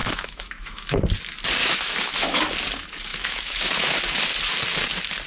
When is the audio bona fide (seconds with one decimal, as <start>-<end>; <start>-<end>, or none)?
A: 1.0-1.6; 2.4-3.1; 3.7-5.3